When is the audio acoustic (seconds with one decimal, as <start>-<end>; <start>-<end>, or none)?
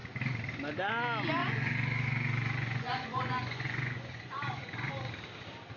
0.0-1.4; 4.9-5.8